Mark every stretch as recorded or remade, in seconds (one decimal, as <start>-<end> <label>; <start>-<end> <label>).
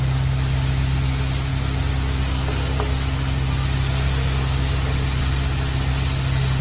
0.0-6.6 recorded